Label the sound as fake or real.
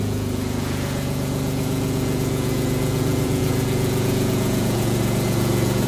fake